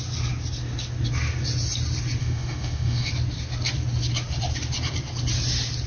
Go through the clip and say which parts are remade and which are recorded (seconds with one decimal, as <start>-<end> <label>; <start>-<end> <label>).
0.0-2.2 recorded; 2.2-3.1 remade; 3.1-5.9 recorded